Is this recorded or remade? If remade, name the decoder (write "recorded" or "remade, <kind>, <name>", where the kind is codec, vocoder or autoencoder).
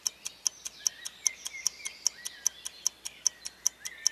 recorded